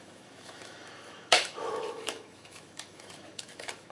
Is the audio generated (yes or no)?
yes